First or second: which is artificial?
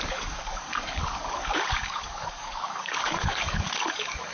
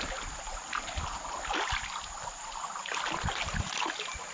first